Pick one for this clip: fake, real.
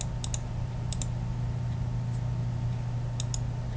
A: real